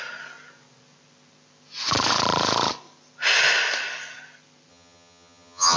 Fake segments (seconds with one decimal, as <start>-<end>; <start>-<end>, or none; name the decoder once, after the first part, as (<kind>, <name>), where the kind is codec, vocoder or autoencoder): 4.7-5.8 (vocoder, HiFi-GAN)